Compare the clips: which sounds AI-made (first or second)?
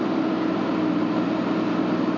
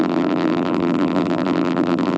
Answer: second